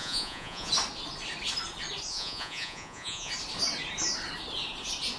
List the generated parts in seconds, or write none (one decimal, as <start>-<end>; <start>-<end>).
0.0-0.7; 2.1-3.3

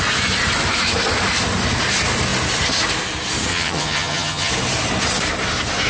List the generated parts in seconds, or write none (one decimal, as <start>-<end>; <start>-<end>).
3.5-4.5

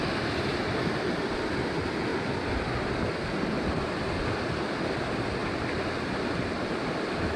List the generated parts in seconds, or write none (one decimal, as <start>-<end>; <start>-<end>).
none

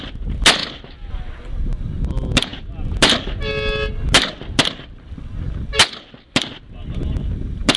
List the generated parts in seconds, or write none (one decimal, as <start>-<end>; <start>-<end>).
none

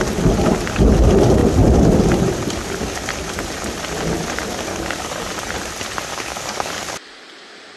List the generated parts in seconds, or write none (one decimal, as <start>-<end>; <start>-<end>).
4.7-5.3; 6.1-6.8